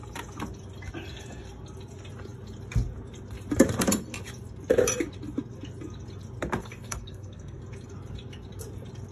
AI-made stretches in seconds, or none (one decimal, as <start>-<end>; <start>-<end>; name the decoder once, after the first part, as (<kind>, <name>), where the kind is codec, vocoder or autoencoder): 6.6-7.6 (codec, SNAC)